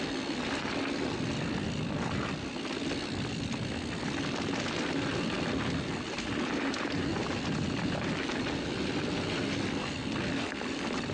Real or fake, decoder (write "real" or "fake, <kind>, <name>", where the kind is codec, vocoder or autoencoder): real